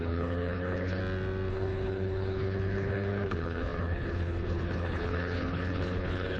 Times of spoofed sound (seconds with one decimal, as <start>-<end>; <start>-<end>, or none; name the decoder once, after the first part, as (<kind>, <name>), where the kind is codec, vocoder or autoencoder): 0.0-1.0 (codec, HILCodec); 1.5-6.4